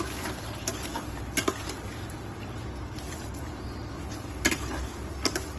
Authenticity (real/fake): real